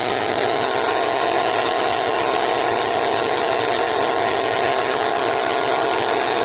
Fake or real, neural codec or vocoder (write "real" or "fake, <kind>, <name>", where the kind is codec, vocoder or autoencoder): fake, vocoder, HiFi-GAN